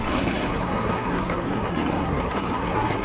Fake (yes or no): yes